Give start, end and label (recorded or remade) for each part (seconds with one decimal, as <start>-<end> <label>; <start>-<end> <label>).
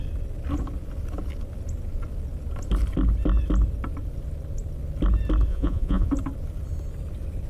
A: 0.0-5.5 recorded; 5.5-6.1 remade; 6.1-7.5 recorded